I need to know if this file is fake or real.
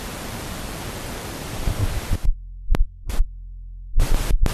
fake